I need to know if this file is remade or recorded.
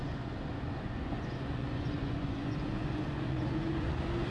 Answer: remade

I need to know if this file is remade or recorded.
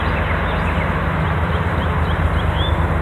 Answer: recorded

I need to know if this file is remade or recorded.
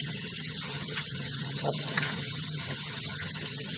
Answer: remade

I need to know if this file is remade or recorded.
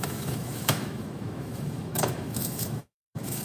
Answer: remade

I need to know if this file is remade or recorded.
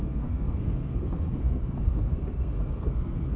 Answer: remade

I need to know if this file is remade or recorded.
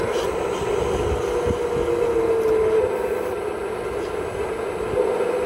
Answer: recorded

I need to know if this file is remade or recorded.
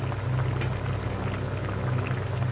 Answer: recorded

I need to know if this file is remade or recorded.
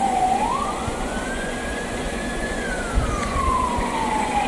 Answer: remade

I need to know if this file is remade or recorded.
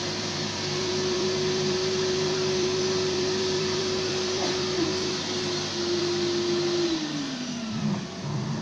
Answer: remade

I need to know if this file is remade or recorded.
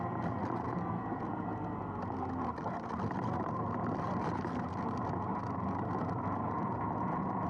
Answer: recorded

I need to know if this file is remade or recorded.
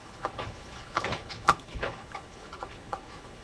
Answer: remade